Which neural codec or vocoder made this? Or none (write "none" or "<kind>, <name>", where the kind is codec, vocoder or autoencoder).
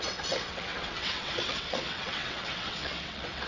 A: vocoder, WaveNeXt